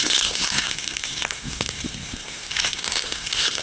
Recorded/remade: remade